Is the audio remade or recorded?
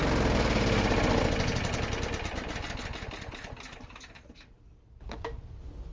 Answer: recorded